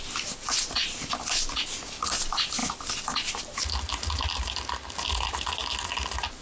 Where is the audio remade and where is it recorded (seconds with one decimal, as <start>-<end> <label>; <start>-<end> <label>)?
0.0-6.4 recorded